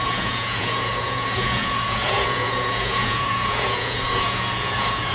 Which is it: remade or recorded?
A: remade